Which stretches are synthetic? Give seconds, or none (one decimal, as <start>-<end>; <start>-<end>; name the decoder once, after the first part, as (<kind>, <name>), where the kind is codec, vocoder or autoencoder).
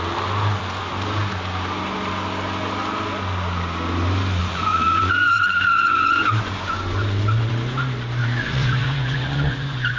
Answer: 4.4-7.5 (vocoder, Vocos); 8.2-10.0